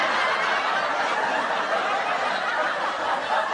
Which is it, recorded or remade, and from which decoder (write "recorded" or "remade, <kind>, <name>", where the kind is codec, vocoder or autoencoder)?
recorded